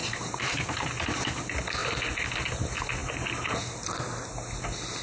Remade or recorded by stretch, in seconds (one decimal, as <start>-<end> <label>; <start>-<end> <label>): 0.0-1.2 remade; 1.2-5.0 recorded